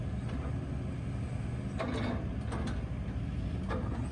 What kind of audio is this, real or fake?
real